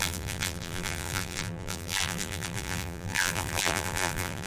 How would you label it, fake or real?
fake